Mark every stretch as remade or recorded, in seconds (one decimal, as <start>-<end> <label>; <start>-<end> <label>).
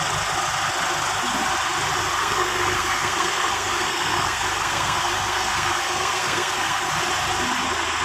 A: 0.0-2.2 recorded; 2.2-6.9 remade; 6.9-8.0 recorded